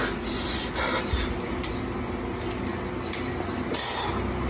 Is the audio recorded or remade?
recorded